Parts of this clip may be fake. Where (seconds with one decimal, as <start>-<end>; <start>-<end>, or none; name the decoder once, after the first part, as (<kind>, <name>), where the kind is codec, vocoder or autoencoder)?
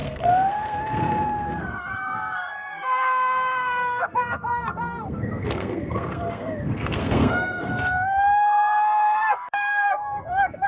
0.0-10.7 (codec, SNAC)